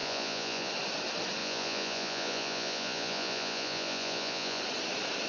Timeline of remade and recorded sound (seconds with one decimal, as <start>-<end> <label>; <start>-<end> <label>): 0.0-0.7 remade; 0.7-1.4 recorded; 1.4-4.6 remade; 4.6-5.3 recorded